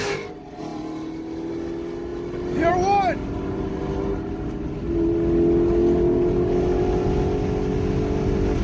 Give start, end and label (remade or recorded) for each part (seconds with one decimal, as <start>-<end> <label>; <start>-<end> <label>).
0.0-8.6 recorded